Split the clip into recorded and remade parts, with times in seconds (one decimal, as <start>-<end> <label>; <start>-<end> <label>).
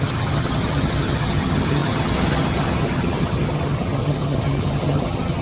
0.0-5.4 remade